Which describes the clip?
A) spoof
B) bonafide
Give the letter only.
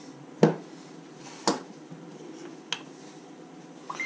B